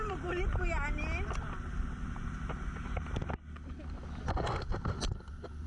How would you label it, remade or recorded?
recorded